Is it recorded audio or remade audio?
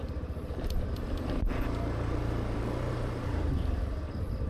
remade